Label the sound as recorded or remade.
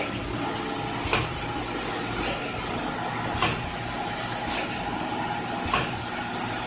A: recorded